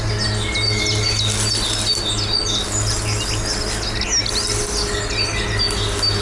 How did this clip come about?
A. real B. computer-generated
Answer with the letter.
A